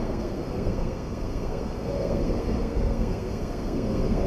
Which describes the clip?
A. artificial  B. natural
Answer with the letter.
A